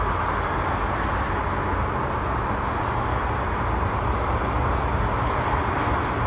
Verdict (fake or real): real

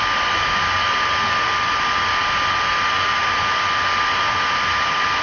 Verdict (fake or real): real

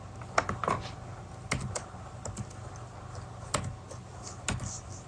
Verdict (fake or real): real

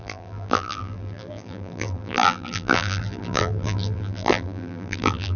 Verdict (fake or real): fake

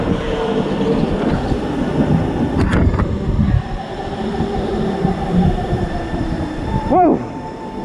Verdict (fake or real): fake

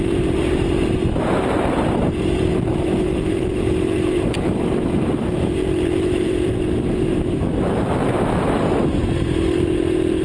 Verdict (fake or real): fake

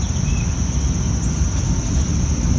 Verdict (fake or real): real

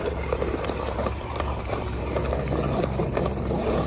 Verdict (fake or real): fake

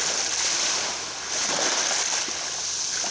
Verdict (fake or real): real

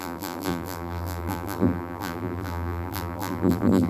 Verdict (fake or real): fake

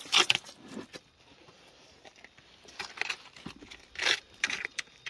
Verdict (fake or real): fake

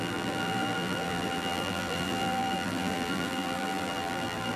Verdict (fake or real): fake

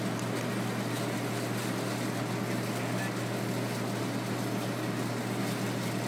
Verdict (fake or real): fake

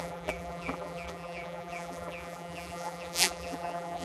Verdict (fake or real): fake